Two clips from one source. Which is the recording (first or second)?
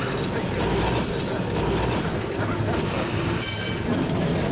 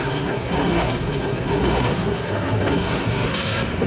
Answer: first